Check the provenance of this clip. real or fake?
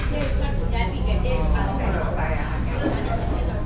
real